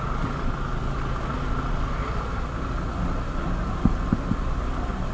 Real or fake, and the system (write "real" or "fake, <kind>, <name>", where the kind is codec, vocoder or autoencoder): real